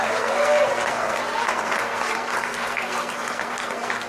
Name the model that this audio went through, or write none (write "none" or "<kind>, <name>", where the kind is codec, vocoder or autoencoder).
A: codec, SNAC